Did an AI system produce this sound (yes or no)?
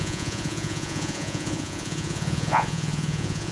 yes